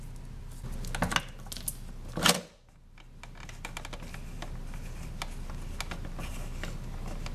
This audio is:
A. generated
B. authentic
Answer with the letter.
B